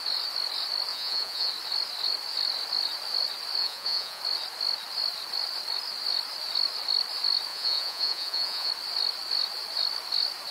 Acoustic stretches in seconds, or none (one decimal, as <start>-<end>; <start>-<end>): 0.0-0.9; 1.5-3.6; 4.2-7.5; 8.7-10.5